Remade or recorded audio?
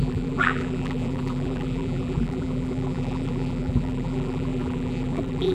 remade